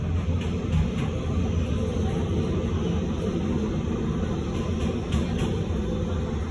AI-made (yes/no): no